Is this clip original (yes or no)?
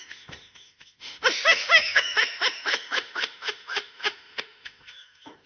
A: no